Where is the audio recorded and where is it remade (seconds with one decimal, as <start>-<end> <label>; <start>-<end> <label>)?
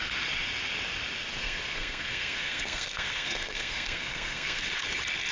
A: 0.0-1.4 recorded; 1.4-4.6 remade; 4.6-5.3 recorded